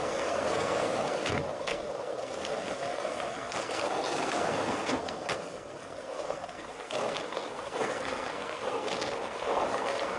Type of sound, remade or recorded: remade